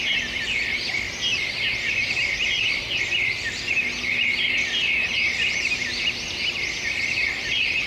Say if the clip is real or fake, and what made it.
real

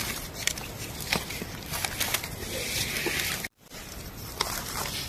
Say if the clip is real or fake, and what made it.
fake, vocoder, BigVGAN v2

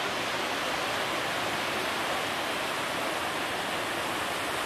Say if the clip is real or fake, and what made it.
fake, vocoder, BigVGAN v2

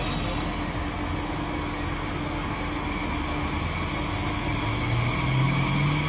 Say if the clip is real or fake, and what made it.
real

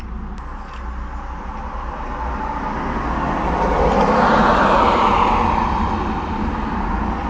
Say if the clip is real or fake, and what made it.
real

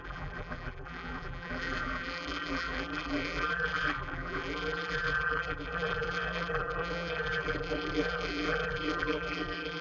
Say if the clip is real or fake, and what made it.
fake, vocoder, BigVGAN v2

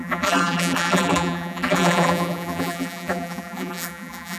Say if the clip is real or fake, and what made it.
fake, vocoder, BigVGAN v2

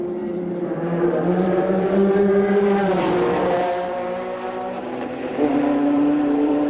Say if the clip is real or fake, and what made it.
fake, vocoder, BigVGAN v2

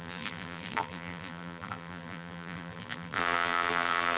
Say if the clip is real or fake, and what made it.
fake, vocoder, BigVGAN v2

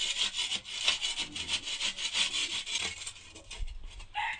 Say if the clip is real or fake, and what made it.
real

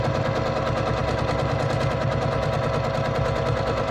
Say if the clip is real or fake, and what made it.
real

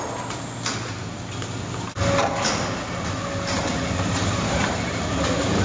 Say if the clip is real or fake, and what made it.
real